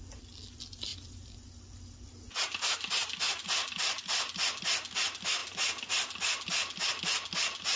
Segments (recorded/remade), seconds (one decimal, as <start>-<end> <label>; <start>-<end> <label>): 0.0-7.8 recorded